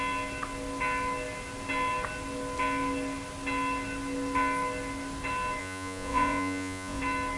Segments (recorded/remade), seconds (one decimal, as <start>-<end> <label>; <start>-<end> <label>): 0.0-5.6 recorded; 5.6-7.0 remade; 7.0-7.4 recorded